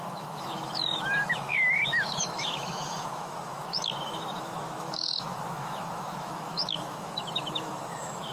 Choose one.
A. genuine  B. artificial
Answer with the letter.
B